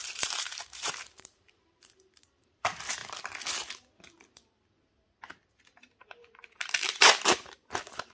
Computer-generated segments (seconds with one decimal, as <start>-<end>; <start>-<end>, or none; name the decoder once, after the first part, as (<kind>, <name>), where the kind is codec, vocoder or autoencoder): 0.0-3.0 (vocoder, BigVGAN v2); 5.5-8.1